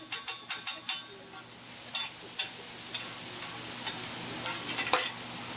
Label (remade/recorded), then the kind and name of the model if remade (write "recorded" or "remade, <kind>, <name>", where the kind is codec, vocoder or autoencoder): recorded